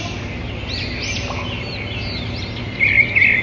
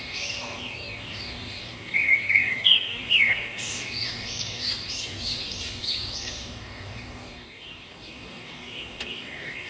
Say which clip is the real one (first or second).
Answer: first